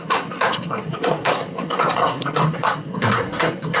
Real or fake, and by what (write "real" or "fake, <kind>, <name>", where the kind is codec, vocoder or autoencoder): fake, codec, SNAC